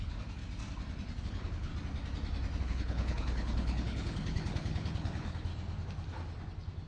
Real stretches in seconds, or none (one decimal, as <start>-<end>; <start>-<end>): 0.4-1.2; 1.7-2.6; 5.5-6.9